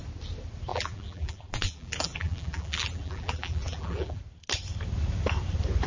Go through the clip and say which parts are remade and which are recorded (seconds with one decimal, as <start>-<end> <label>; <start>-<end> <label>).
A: 0.0-0.7 recorded; 0.7-4.2 remade; 4.2-5.9 recorded